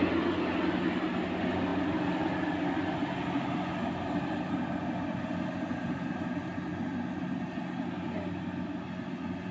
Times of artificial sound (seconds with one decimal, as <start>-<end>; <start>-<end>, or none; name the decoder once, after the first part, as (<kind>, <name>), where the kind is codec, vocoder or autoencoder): none